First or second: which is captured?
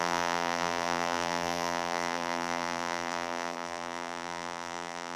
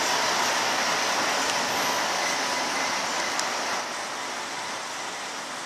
second